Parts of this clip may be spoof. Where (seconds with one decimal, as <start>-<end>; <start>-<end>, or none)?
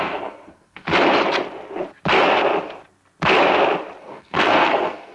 0.0-0.9; 4.0-5.1